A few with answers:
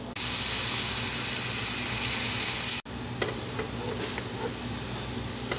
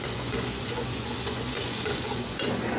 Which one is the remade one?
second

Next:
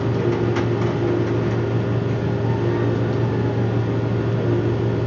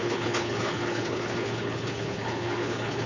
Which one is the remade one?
second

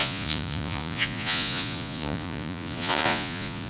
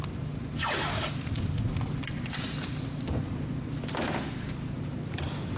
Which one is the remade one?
first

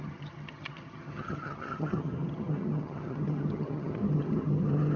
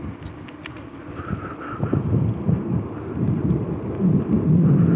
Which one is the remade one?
first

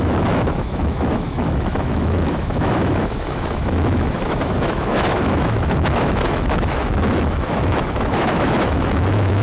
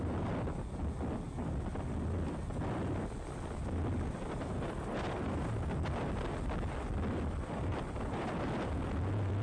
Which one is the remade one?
first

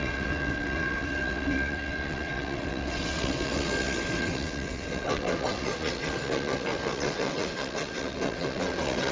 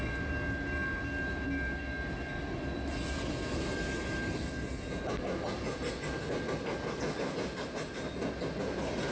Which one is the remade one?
first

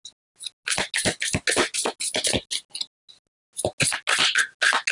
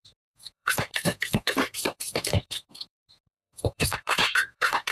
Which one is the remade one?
second